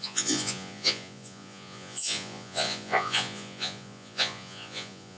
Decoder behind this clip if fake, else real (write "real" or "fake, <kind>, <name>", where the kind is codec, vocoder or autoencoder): fake, vocoder, Vocos